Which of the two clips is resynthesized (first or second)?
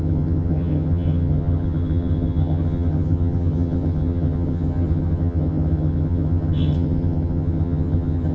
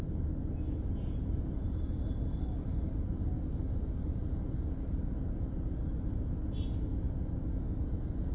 first